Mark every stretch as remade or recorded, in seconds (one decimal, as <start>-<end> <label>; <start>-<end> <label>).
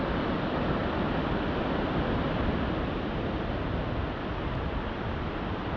0.0-5.8 recorded